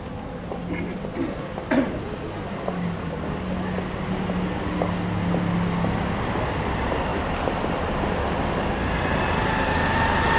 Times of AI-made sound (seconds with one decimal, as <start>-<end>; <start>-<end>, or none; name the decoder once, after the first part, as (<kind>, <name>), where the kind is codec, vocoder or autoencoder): none